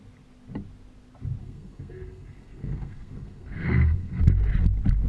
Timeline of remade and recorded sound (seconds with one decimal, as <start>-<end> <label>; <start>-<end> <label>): 0.0-1.4 recorded; 1.4-4.2 remade; 4.2-5.1 recorded